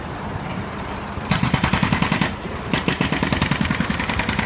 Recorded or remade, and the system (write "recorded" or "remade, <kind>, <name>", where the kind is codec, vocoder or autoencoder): remade, vocoder, BigVGAN v2